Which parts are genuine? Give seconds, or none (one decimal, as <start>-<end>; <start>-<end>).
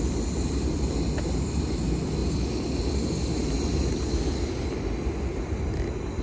0.0-6.2